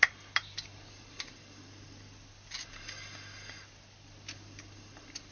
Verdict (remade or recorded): recorded